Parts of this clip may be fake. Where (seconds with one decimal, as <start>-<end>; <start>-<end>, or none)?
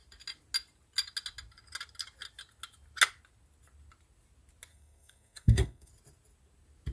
4.7-5.9